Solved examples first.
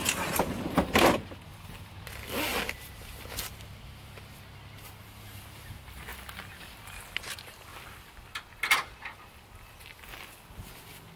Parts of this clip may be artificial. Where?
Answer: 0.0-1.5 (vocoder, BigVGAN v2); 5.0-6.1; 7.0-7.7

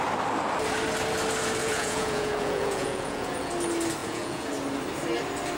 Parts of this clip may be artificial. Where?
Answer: 1.6-3.5 (vocoder, Vocos); 4.0-4.5

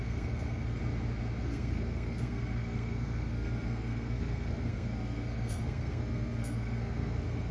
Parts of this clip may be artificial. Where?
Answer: 0.0-0.8 (codec, SNAC); 1.4-7.5

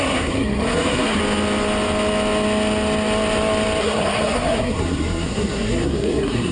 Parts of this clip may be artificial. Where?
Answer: 0.0-1.2 (codec, SNAC); 3.8-6.5

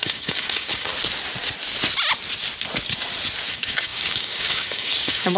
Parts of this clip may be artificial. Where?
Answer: 0.0-0.9 (codec, DAC); 3.5-5.4

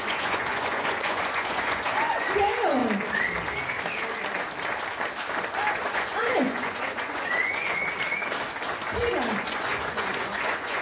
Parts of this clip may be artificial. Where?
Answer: 0.0-2.8 (vocoder, Vocos); 5.7-7.8; 9.4-10.8

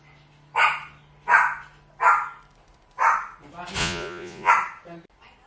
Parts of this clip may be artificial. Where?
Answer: 3.8-4.5 (vocoder, Vocos)